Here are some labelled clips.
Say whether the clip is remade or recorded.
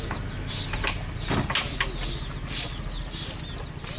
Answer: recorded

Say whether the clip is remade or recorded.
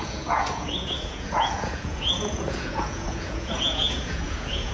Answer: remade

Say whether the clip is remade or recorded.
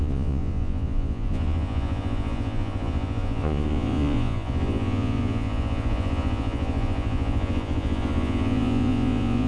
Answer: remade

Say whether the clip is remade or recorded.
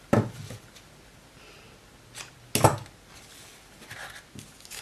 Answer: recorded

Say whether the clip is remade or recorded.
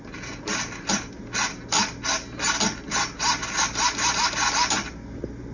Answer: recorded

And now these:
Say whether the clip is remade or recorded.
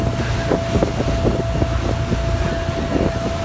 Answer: recorded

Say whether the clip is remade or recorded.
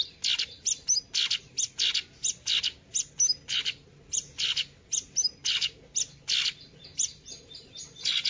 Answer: recorded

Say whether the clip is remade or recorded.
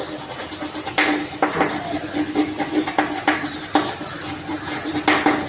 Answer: recorded